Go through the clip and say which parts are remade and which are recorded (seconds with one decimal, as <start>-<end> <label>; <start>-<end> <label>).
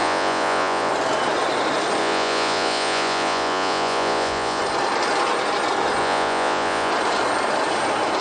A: 0.0-0.9 remade; 0.9-2.0 recorded; 2.0-4.6 remade; 4.6-6.0 recorded; 6.0-6.9 remade; 6.9-8.2 recorded